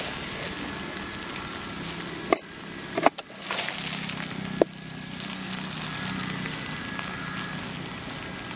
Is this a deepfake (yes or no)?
no